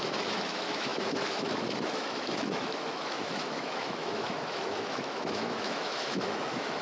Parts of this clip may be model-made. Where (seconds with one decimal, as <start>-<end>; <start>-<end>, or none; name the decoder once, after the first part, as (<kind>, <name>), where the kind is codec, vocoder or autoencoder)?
0.0-6.8 (autoencoder, DAC-VAE)